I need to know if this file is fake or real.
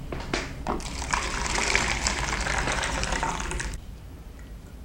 fake